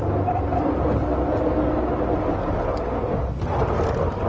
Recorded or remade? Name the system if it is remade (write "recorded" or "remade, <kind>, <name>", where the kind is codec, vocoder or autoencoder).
recorded